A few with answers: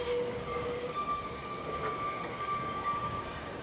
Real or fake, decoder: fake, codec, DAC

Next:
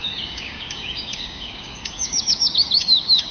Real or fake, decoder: fake, codec, DAC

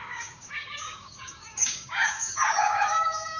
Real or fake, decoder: fake, codec, DAC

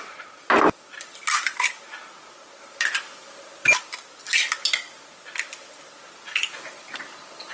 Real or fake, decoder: real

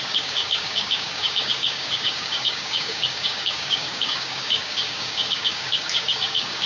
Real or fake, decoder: fake, codec, DAC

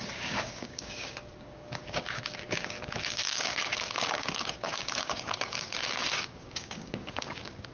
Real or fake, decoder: fake, codec, DAC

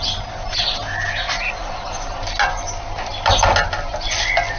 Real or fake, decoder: real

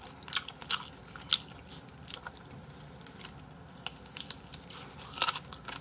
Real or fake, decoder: real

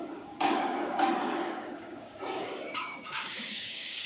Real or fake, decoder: fake, codec, DAC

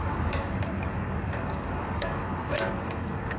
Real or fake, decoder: fake, codec, DAC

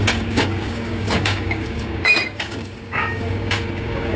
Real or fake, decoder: fake, codec, DAC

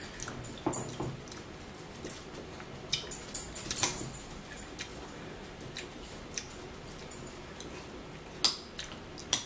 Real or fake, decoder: real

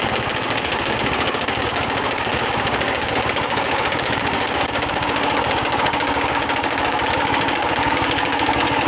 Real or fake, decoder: fake, codec, DAC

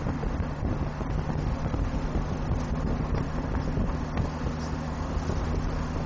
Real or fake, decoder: real